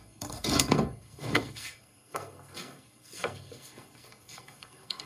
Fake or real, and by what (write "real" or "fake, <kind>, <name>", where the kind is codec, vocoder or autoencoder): fake, codec, SNAC